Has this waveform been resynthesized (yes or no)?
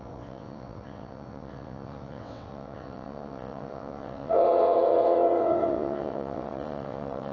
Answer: yes